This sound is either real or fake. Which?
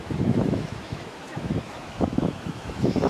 fake